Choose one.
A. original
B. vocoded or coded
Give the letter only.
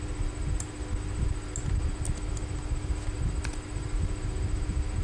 A